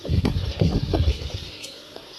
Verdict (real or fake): fake